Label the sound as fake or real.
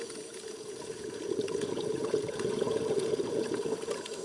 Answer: fake